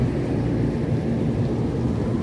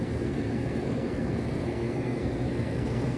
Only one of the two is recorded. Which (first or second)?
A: first